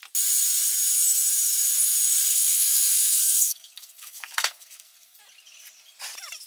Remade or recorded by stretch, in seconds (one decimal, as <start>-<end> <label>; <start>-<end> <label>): 0.0-2.3 recorded; 2.3-5.2 remade; 5.2-6.5 recorded